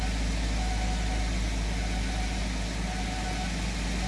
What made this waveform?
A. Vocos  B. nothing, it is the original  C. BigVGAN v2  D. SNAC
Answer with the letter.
B